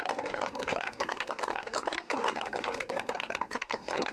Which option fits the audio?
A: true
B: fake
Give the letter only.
B